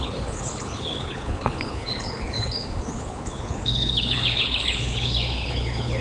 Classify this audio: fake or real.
fake